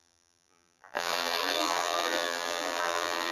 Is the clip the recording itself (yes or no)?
no